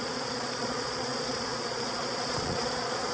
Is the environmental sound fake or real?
fake